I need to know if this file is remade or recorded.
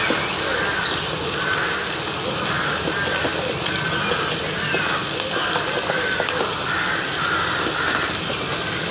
recorded